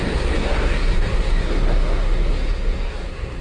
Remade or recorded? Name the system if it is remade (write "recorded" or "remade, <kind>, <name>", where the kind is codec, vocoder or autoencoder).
remade, codec, SNAC